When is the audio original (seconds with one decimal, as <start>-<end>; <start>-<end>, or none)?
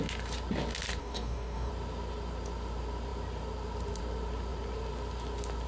0.0-1.0; 1.7-5.7